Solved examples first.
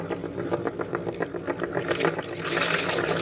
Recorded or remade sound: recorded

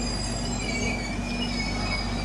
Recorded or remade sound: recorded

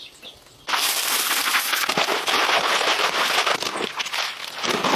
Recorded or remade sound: recorded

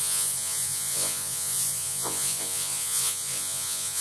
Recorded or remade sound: remade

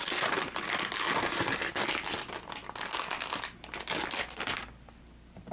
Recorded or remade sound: recorded